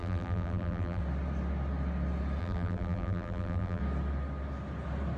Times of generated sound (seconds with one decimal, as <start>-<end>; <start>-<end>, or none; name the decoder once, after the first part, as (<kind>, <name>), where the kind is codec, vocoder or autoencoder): 0.0-1.0 (vocoder, BigVGAN v2); 2.4-3.8